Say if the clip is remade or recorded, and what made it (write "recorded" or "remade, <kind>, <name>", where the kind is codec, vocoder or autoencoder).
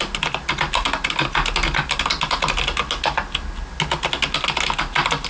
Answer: recorded